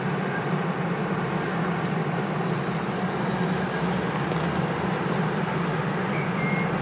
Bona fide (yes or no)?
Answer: yes